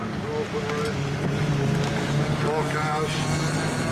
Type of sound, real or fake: real